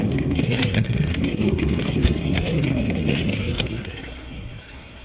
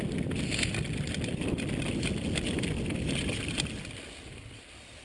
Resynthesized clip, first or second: first